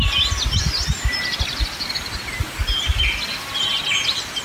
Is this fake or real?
real